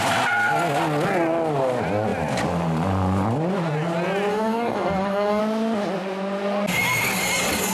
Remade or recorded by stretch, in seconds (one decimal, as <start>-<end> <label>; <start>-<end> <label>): 0.0-4.3 recorded; 4.3-5.4 remade; 5.4-7.7 recorded